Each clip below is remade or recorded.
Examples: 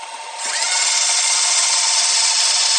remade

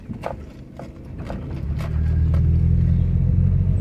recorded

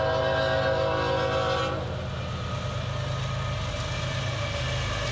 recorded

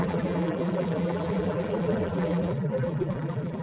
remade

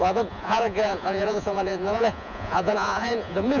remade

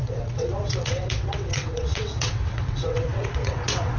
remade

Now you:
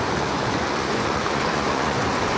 remade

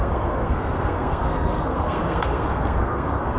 remade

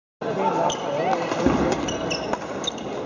recorded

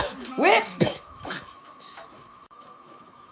remade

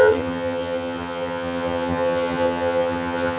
remade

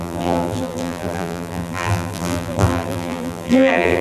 remade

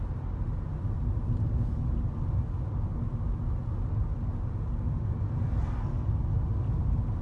recorded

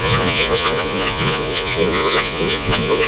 remade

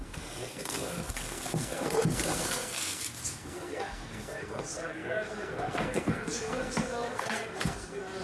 remade